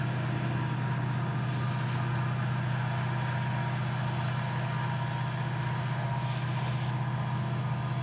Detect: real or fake real